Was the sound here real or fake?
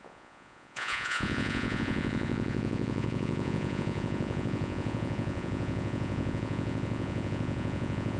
fake